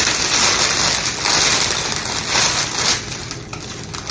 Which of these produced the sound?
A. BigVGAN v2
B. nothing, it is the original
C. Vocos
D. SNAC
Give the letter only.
B